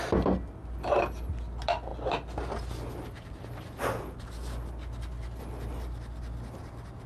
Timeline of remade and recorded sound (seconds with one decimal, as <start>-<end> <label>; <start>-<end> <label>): 0.0-7.1 recorded